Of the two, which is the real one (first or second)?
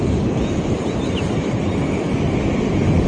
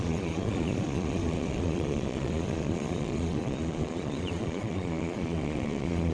first